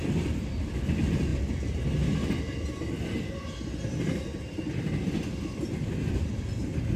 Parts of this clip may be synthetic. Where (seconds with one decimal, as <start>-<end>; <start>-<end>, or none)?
none